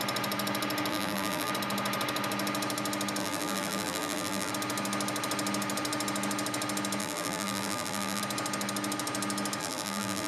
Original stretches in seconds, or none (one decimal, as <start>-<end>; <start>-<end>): 0.0-0.9; 1.5-3.2; 4.5-7.0; 8.2-9.6